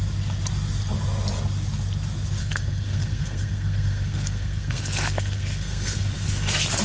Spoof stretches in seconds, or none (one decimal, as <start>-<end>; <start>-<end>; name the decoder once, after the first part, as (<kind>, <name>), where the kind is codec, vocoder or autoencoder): 2.4-6.8 (codec, SNAC)